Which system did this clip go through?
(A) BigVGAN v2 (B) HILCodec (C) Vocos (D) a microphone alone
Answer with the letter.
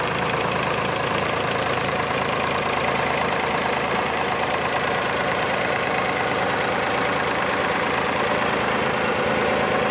A